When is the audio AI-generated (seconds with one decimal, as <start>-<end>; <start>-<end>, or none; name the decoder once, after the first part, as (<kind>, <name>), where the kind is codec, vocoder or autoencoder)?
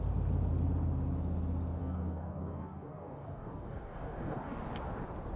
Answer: 1.8-4.6 (codec, DAC)